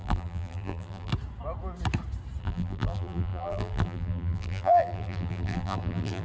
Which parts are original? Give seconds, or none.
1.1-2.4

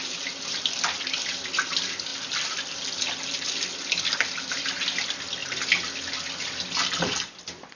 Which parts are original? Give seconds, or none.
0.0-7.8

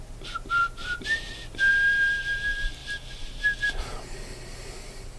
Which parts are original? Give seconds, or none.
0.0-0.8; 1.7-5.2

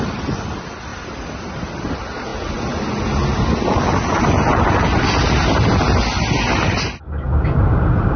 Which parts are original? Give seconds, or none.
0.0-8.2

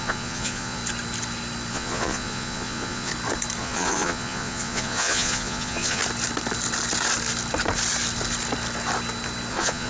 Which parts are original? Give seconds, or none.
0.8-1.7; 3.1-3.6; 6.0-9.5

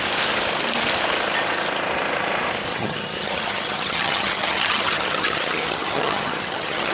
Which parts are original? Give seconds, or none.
0.0-2.7

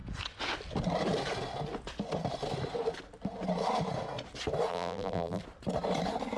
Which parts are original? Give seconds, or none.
0.0-4.7; 5.4-6.4

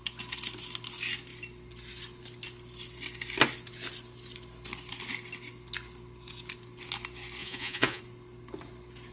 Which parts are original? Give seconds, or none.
0.0-7.4; 8.0-9.1